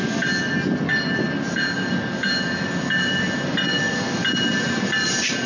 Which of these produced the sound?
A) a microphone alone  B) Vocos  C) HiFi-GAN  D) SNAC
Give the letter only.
A